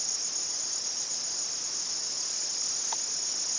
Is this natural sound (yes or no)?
yes